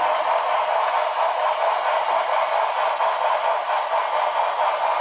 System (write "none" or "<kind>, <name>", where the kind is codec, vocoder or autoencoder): none